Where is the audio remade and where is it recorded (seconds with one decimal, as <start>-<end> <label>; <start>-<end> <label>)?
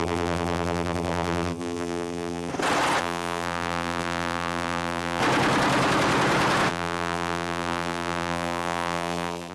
0.0-2.5 remade; 2.5-3.0 recorded; 3.0-5.2 remade; 5.2-6.7 recorded; 6.7-9.5 remade